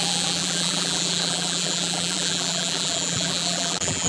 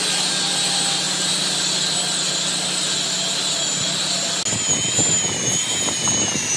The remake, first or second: first